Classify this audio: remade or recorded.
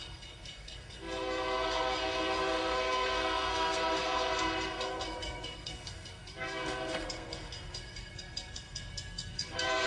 remade